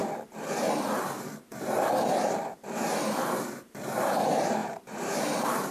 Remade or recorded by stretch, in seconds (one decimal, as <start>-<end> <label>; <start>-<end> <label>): 0.0-5.7 remade